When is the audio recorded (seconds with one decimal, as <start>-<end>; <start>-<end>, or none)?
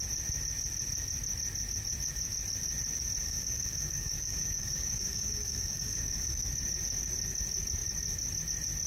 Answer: 0.0-3.2; 6.5-8.9